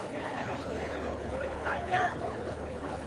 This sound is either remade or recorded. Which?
remade